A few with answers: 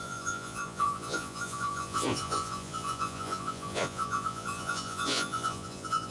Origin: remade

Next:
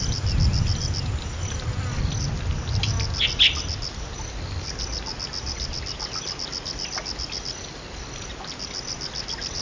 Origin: recorded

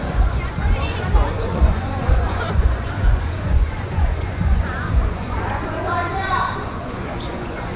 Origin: remade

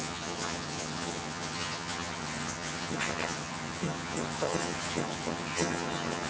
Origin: remade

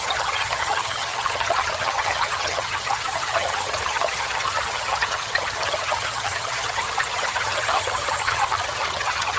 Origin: remade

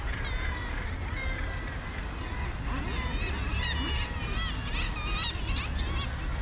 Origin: recorded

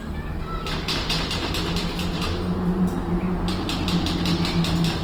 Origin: recorded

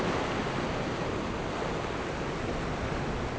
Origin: recorded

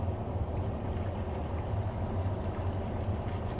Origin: recorded